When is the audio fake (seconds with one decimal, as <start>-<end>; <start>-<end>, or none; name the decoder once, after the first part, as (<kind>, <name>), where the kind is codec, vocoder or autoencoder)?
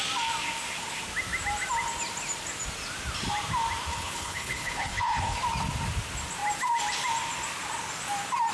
3.9-5.4 (codec, HILCodec)